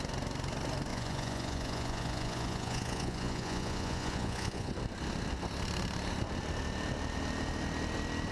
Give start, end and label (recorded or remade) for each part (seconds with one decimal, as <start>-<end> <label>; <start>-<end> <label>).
0.0-0.9 recorded; 0.9-4.7 remade; 4.7-8.3 recorded

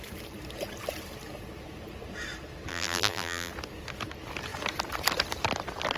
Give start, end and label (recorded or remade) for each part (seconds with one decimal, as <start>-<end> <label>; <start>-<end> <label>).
0.0-2.7 recorded; 2.7-3.5 remade; 3.5-6.0 recorded

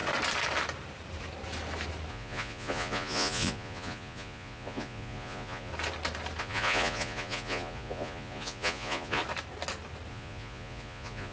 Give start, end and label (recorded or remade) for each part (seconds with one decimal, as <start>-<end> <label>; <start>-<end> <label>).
0.0-2.1 recorded; 2.1-5.7 remade; 5.7-6.4 recorded; 6.4-9.2 remade; 9.2-10.1 recorded; 10.1-11.3 remade

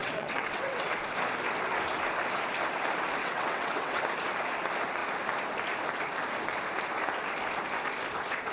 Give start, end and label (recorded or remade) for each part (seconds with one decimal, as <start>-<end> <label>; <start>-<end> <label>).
0.0-1.0 remade; 1.0-3.2 recorded; 3.2-4.0 remade; 4.0-8.5 recorded

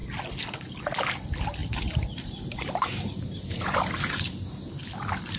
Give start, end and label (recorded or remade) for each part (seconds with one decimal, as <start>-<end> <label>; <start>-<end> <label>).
0.0-1.6 recorded; 1.6-4.8 remade; 4.8-5.4 recorded

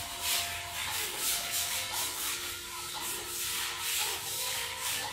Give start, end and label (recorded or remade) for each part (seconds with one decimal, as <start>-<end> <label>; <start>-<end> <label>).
0.0-0.8 recorded; 0.8-3.0 remade; 3.0-3.9 recorded; 3.9-5.1 remade

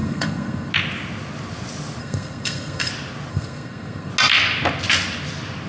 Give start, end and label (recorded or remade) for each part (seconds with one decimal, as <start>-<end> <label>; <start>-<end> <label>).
0.0-0.7 remade; 0.7-2.0 recorded; 2.0-2.9 remade; 2.9-3.3 recorded; 3.3-4.1 remade; 4.1-5.7 recorded